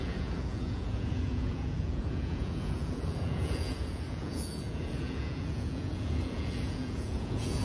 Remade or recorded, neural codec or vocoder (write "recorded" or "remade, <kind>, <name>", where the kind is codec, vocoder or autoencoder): remade, vocoder, Vocos